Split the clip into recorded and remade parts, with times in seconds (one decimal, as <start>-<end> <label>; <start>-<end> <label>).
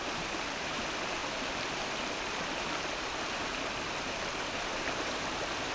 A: 0.0-5.7 recorded